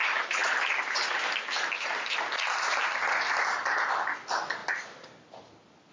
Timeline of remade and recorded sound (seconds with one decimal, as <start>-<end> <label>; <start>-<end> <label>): 0.0-5.9 recorded